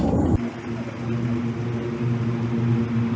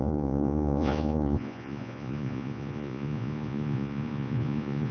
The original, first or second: first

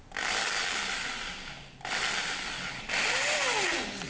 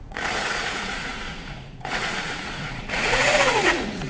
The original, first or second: first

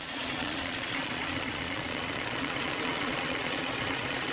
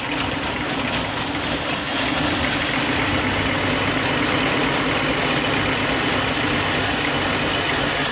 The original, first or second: second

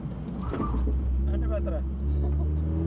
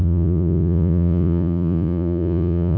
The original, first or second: first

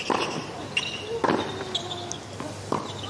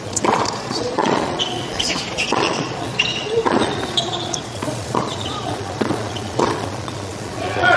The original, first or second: first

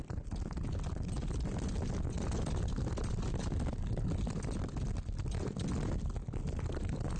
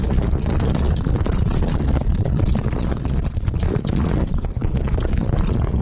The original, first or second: first